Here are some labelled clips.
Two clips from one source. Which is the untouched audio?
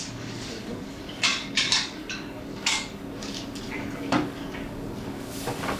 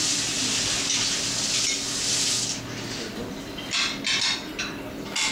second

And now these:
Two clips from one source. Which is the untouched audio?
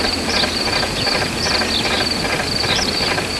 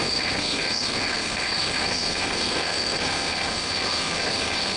first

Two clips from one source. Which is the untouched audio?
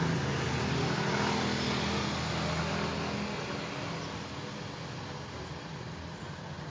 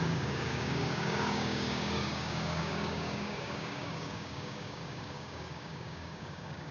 first